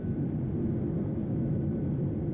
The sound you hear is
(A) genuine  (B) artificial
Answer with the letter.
B